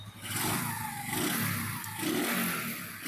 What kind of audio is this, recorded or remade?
recorded